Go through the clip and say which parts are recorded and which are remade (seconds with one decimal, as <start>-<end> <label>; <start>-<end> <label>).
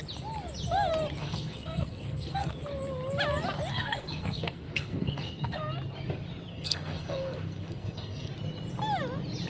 0.0-1.2 recorded; 1.2-2.5 remade; 2.5-3.7 recorded; 3.7-5.7 remade; 5.7-6.5 recorded; 6.5-8.3 remade; 8.3-9.5 recorded